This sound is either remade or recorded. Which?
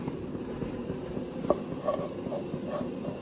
recorded